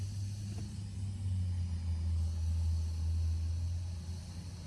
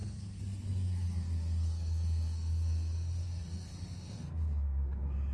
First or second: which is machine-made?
second